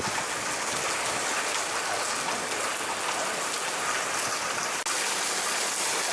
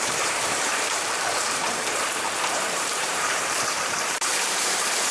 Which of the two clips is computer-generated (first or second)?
second